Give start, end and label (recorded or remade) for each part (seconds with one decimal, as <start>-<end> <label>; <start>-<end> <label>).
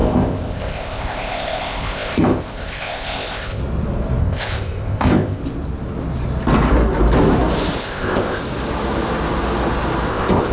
0.0-3.6 remade; 3.6-4.2 recorded; 4.2-5.4 remade; 5.4-7.8 recorded; 7.8-8.4 remade; 8.4-10.1 recorded; 10.1-10.5 remade